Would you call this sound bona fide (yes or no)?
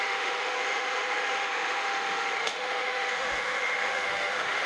no